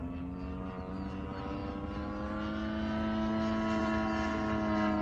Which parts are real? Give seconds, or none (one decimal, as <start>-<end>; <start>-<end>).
0.0-5.0